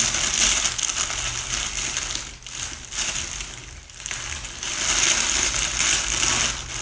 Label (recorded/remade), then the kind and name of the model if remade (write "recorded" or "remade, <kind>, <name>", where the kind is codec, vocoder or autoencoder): recorded